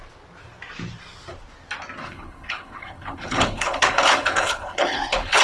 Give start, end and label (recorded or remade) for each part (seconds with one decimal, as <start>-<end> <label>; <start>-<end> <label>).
0.0-2.0 recorded; 2.0-5.4 remade